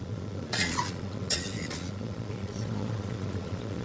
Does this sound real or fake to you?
fake